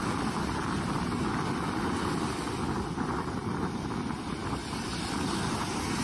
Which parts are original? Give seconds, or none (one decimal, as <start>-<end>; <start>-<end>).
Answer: 0.0-6.0